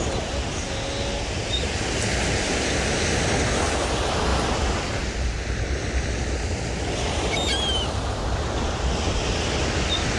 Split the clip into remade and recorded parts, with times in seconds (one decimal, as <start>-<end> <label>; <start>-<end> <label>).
0.0-2.1 recorded; 2.1-2.9 remade; 2.9-4.3 recorded; 4.3-6.2 remade; 6.2-10.2 recorded